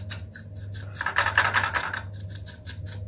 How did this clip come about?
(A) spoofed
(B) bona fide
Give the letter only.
B